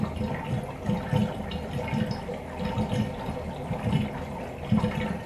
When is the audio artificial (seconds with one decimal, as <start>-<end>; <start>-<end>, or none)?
none